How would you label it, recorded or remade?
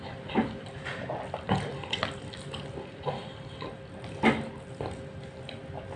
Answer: recorded